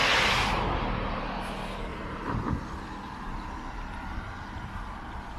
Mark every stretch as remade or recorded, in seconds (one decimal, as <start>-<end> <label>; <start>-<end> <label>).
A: 0.0-1.5 remade; 1.5-1.9 recorded; 1.9-2.5 remade; 2.5-5.4 recorded

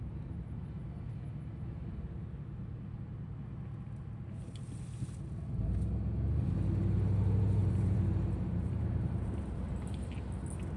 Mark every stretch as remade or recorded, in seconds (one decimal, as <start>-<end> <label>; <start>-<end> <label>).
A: 0.0-7.6 recorded; 7.6-9.4 remade; 9.4-10.8 recorded